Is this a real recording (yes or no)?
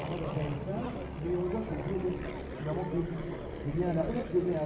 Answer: yes